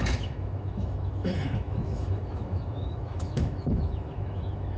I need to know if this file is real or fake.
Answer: fake